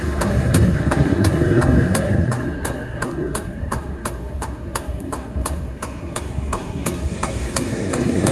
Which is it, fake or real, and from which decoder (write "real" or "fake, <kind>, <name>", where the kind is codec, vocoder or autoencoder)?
fake, codec, SNAC